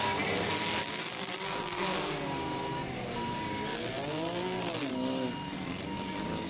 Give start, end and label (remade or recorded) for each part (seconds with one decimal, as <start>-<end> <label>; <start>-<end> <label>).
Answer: 0.0-0.8 recorded; 0.8-1.8 remade; 1.8-3.7 recorded; 3.7-4.9 remade; 4.9-6.5 recorded